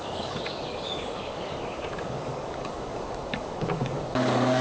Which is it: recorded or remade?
remade